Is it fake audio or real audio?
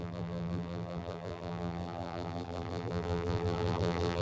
fake